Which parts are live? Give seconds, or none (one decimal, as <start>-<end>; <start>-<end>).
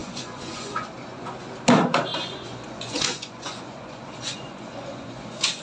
1.5-2.1